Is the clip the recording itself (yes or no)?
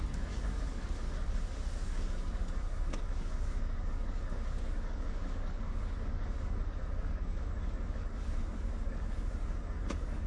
no